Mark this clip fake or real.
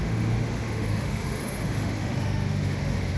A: fake